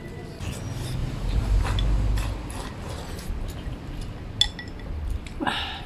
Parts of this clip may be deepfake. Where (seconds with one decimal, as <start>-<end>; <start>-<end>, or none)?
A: 1.0-1.6